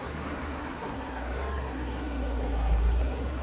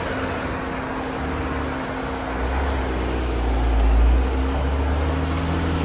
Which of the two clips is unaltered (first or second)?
second